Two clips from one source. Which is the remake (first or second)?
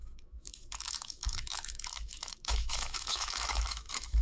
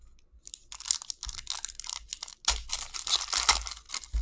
first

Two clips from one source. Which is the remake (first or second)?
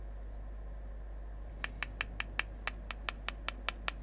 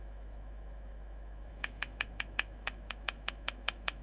second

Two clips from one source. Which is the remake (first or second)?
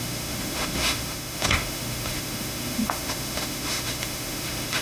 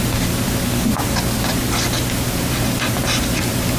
first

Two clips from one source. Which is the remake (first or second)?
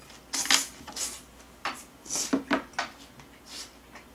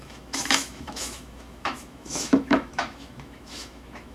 second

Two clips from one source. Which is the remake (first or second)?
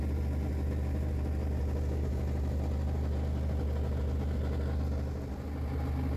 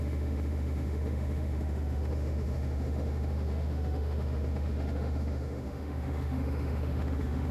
second